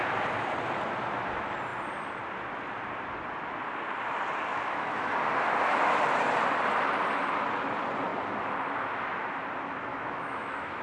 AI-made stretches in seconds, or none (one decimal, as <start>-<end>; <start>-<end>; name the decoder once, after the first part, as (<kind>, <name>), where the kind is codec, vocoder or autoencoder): 4.5-5.1 (autoencoder, DAC-VAE); 9.9-10.8